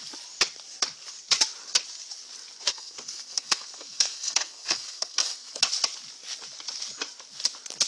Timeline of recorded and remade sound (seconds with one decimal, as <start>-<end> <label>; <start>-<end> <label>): 0.0-2.7 recorded; 2.7-5.6 remade; 5.6-7.9 recorded

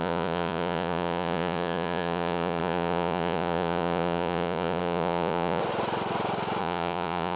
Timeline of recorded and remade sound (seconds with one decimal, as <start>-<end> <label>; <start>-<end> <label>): 0.0-5.6 remade; 5.6-6.6 recorded; 6.6-7.4 remade